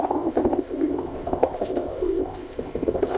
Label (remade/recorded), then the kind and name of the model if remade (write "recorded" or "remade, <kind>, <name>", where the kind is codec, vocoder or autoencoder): remade, codec, ZipCodec